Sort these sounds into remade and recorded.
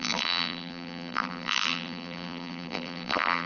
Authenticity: remade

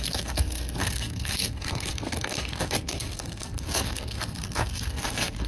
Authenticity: remade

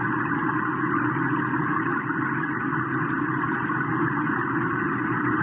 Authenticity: recorded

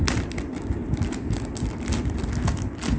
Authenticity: recorded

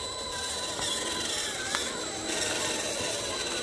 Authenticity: recorded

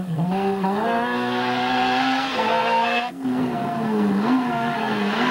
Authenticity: remade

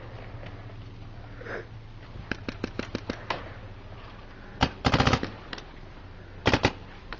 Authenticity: recorded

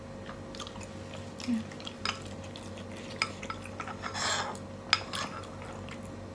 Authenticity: recorded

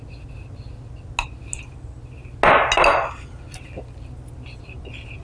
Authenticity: recorded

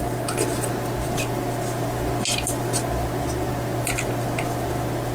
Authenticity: recorded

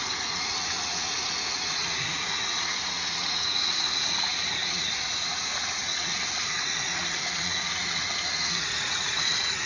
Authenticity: remade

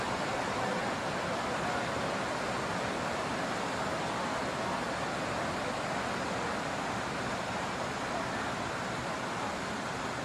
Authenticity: recorded